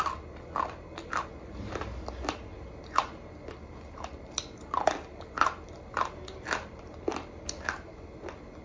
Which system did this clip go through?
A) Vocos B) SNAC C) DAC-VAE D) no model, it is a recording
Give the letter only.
D